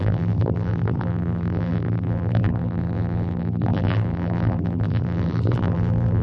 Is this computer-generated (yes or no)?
yes